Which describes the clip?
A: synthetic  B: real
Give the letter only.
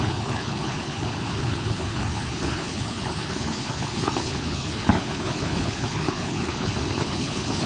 A